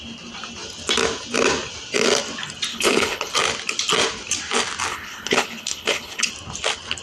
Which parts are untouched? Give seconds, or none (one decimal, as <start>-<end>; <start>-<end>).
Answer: 0.0-2.7; 3.3-4.9; 6.3-7.0